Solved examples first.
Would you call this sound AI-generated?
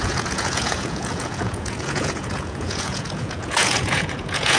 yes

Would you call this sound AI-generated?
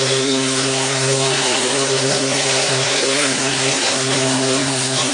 yes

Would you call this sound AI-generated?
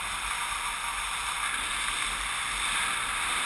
no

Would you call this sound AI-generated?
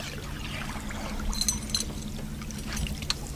no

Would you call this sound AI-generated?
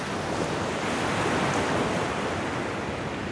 no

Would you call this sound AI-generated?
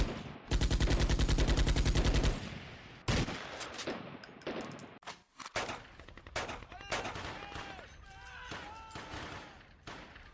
no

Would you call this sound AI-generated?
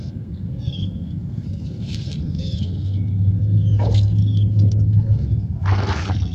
yes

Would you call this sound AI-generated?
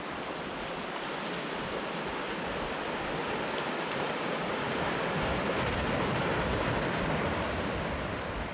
no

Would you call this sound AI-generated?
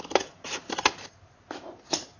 no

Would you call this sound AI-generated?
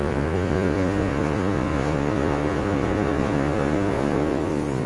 yes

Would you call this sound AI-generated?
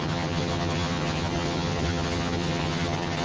yes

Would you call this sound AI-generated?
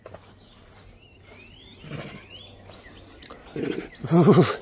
no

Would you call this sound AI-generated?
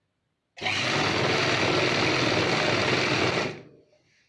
no